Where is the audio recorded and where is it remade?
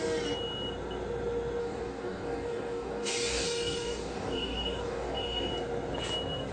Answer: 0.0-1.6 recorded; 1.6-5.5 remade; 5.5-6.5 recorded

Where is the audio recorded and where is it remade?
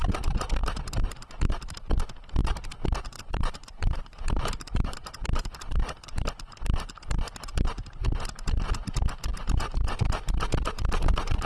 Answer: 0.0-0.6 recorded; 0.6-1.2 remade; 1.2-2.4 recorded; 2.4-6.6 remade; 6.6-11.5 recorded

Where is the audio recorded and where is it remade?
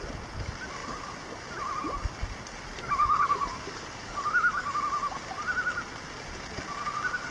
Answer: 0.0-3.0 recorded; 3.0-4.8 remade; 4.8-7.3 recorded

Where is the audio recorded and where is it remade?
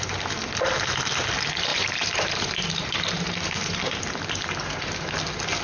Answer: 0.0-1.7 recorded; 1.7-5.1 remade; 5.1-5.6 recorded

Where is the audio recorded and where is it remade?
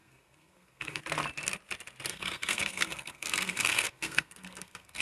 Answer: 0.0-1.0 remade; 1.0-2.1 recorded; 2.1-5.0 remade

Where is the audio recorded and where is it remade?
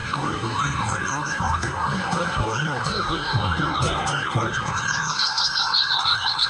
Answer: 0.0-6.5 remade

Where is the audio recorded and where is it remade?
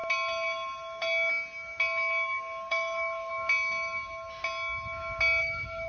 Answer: 0.0-2.7 recorded; 2.7-3.3 remade; 3.3-5.4 recorded; 5.4-5.9 remade